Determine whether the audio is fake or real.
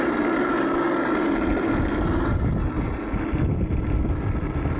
fake